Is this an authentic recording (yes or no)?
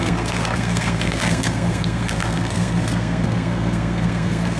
no